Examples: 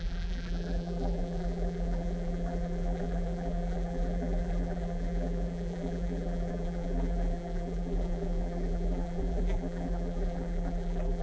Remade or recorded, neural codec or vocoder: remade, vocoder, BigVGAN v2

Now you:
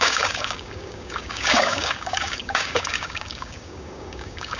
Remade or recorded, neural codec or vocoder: remade, codec, DAC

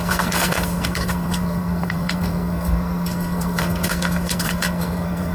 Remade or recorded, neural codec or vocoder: remade, codec, SNAC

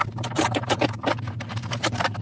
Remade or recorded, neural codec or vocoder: remade, vocoder, BigVGAN v2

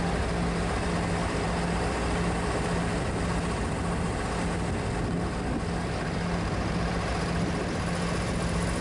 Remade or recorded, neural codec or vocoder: recorded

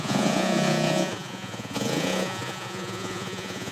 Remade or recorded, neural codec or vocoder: remade, vocoder, Vocos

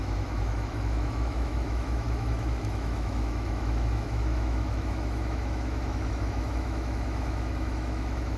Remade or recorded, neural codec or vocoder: remade, autoencoder, DAC-VAE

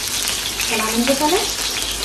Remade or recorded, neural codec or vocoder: recorded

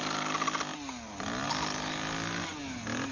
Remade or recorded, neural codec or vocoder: recorded